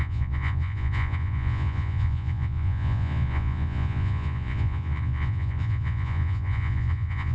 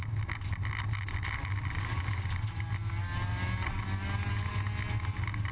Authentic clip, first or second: second